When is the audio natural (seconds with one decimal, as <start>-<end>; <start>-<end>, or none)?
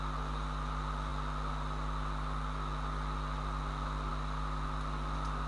0.0-5.5